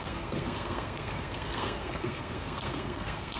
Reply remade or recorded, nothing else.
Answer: remade